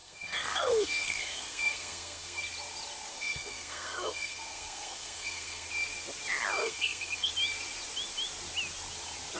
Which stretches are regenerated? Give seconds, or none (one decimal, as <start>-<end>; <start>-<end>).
0.0-2.4; 3.1-5.7; 6.6-7.3